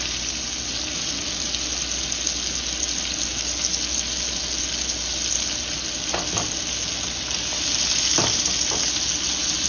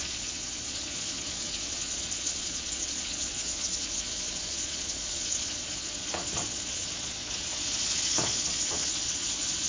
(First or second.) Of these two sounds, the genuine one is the first